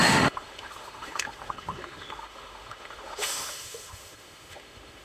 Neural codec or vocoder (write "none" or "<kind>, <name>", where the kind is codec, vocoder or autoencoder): autoencoder, DAC-VAE